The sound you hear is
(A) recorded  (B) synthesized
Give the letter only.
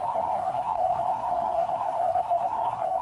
B